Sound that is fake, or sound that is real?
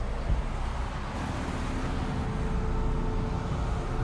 real